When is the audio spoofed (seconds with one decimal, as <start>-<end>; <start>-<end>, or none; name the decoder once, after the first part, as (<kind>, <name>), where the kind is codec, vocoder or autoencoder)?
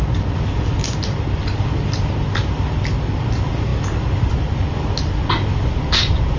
none